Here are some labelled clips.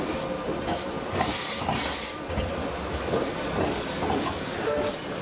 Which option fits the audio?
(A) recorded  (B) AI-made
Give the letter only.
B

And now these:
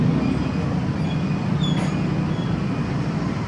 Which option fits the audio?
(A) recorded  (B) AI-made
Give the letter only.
A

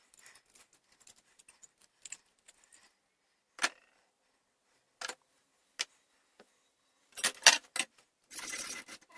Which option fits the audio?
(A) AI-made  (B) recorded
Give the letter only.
B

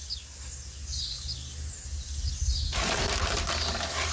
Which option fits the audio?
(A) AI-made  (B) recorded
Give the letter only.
B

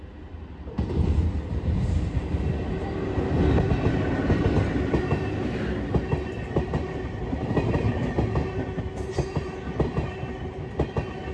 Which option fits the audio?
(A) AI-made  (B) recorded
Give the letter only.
B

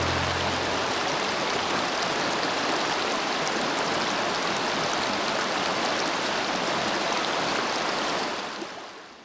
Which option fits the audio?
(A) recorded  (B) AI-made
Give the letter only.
A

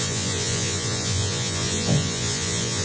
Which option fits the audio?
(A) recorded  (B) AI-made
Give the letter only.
B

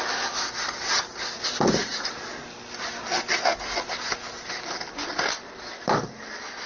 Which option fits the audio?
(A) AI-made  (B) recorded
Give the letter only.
B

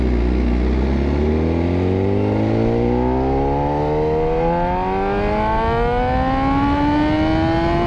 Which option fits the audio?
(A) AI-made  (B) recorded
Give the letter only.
B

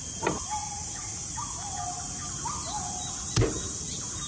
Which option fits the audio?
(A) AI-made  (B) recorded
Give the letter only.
B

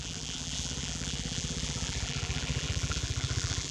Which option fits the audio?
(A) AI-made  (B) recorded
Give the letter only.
A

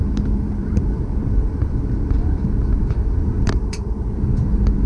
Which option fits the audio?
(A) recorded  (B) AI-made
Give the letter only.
B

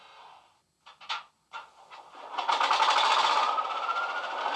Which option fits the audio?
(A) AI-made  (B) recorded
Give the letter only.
B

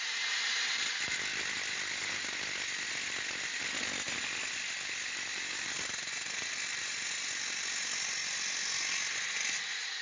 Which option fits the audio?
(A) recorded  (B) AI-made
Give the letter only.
A